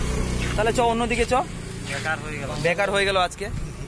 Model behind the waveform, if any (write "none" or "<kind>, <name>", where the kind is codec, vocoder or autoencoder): none